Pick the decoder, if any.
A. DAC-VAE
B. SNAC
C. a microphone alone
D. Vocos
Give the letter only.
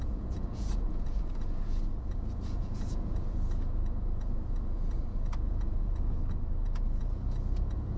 D